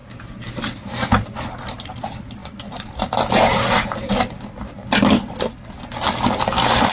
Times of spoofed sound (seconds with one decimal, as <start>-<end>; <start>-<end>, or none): none